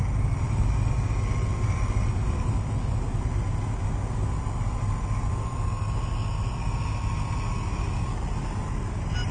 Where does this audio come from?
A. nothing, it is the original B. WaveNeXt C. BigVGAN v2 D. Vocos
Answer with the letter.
A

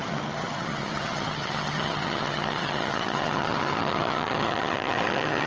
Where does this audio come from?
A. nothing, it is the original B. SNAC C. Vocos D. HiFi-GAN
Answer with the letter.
D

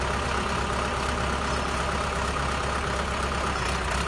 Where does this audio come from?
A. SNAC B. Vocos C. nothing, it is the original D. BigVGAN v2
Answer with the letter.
C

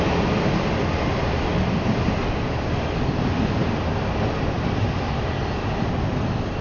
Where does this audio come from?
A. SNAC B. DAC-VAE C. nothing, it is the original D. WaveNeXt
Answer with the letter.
C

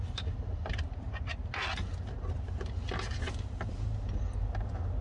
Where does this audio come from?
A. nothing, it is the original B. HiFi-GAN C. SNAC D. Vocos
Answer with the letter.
A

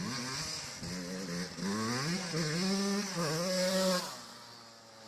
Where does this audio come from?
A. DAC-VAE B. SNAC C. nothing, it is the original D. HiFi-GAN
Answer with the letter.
C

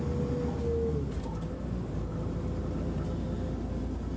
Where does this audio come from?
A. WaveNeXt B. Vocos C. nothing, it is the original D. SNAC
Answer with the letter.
C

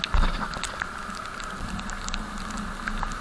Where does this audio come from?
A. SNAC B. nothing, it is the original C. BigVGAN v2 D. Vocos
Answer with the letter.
B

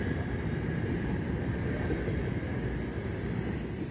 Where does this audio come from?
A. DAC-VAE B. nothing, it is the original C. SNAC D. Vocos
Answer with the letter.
B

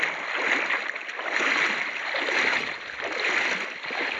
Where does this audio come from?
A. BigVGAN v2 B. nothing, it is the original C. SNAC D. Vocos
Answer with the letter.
B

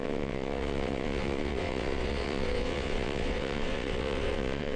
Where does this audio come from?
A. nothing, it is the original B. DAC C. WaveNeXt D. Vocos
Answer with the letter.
C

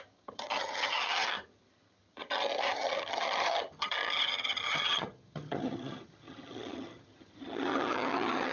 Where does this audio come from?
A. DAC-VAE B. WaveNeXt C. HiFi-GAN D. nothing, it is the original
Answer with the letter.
C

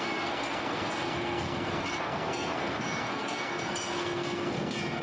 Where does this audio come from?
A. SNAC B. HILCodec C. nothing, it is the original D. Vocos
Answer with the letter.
A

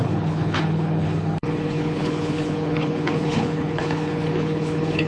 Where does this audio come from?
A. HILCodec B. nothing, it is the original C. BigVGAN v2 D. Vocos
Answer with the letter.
A